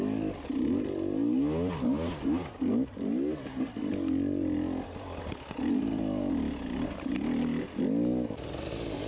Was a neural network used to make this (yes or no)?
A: no